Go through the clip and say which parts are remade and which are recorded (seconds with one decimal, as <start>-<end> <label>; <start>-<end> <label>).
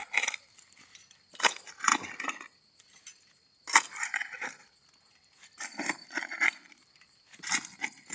0.0-8.1 recorded